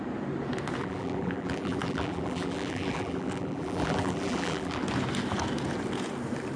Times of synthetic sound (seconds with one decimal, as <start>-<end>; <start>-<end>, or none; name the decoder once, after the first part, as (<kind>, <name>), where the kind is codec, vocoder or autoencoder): 0.8-4.8 (vocoder, BigVGAN v2)